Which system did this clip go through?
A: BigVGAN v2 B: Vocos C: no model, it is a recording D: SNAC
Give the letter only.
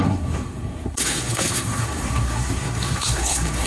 D